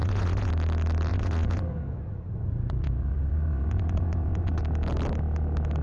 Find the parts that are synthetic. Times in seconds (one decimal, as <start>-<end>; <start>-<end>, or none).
0.0-0.5; 1.1-4.6